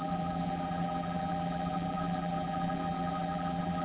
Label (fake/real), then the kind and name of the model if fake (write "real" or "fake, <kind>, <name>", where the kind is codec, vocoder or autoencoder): fake, vocoder, BigVGAN v2